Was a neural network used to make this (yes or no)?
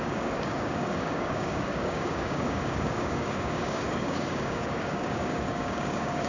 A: yes